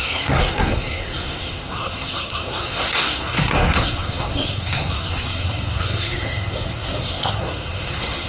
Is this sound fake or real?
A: fake